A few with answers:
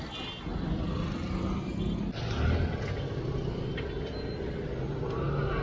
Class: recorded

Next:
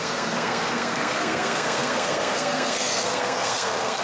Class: remade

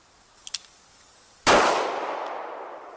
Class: recorded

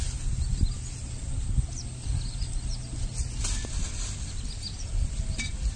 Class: recorded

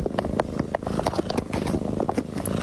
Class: recorded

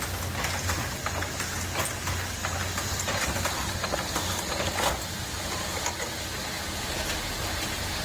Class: recorded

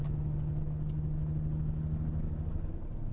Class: recorded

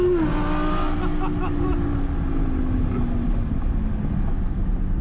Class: recorded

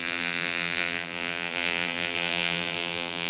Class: remade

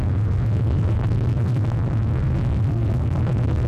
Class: remade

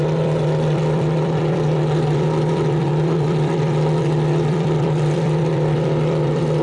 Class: remade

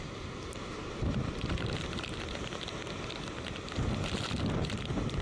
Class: remade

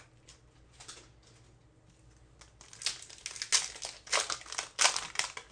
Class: recorded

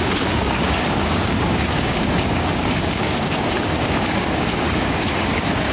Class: remade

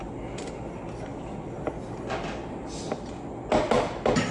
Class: recorded